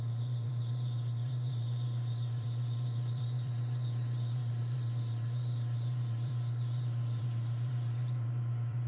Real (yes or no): no